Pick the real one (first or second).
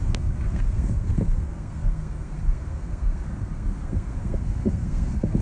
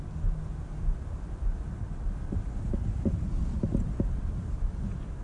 second